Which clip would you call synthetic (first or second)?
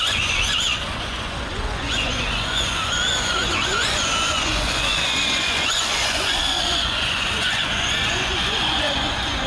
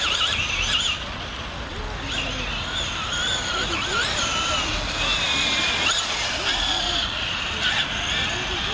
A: first